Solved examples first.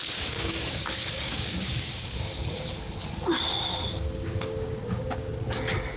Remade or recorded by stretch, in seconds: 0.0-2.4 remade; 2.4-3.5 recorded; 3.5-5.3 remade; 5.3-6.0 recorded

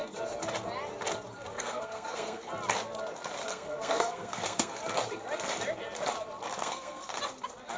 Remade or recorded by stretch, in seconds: 0.0-1.5 recorded; 1.5-2.5 remade; 2.5-3.5 recorded; 3.5-4.8 remade; 4.8-6.6 recorded; 6.6-7.2 remade; 7.2-7.8 recorded